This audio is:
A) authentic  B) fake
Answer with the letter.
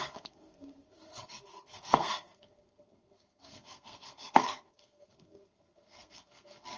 B